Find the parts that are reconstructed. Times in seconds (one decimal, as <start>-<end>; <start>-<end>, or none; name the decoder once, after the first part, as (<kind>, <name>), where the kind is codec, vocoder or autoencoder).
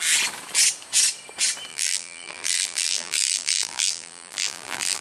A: 1.7-5.0 (vocoder, BigVGAN v2)